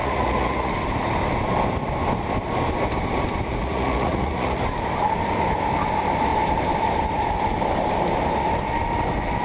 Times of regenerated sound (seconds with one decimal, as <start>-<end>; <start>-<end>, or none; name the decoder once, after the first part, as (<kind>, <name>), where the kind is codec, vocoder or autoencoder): 0.0-0.7 (vocoder, Vocos); 3.6-4.6